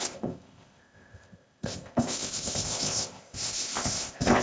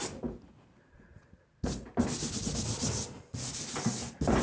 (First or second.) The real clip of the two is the second